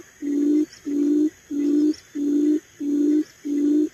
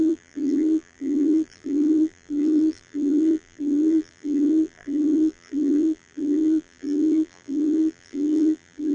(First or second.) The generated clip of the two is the second